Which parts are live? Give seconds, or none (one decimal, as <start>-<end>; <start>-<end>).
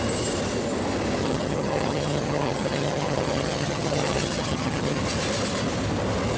0.0-1.2; 5.0-6.4